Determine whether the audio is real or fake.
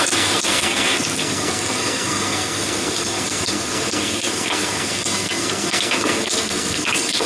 fake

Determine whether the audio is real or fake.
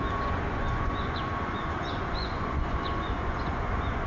fake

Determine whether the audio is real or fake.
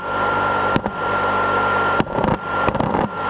real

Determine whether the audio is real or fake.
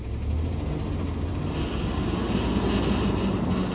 real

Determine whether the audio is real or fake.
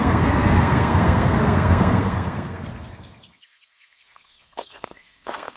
fake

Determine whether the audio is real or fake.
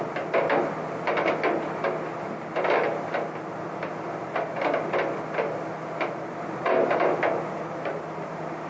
real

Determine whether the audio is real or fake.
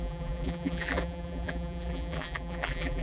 fake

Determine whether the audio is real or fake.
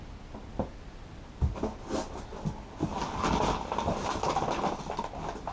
real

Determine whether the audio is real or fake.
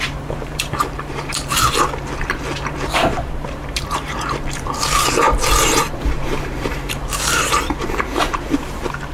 fake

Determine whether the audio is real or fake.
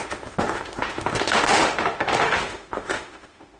fake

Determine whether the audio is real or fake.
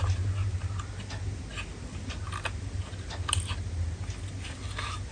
real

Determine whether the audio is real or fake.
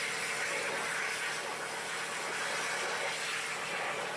real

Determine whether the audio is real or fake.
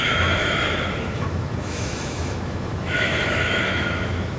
fake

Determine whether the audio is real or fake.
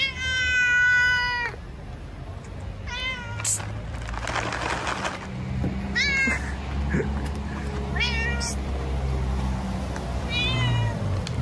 real